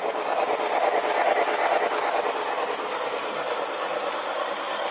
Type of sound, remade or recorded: recorded